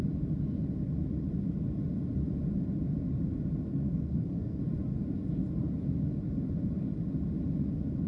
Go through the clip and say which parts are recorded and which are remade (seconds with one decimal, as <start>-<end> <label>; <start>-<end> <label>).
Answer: 0.0-3.7 recorded; 3.7-4.6 remade; 4.6-8.1 recorded